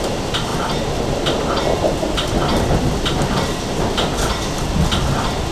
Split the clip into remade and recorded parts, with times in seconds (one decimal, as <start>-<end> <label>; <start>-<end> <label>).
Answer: 0.0-5.5 recorded